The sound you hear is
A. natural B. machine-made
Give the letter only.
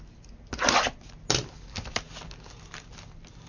A